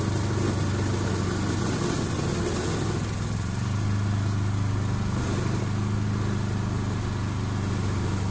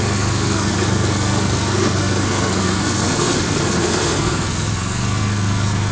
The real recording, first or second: first